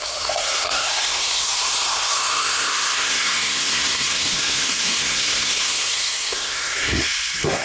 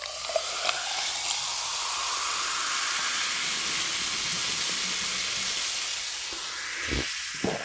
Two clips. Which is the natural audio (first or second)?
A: second